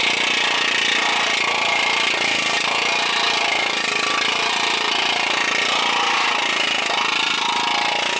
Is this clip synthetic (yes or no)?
no